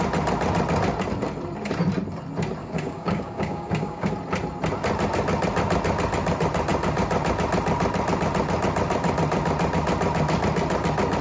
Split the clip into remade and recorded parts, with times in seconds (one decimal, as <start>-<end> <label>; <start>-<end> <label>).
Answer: 0.0-2.6 recorded; 2.6-4.1 remade; 4.1-11.2 recorded